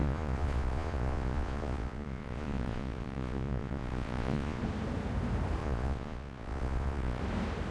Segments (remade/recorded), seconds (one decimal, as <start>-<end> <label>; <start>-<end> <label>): 0.0-4.6 remade; 4.6-5.6 recorded; 5.6-7.2 remade; 7.2-7.7 recorded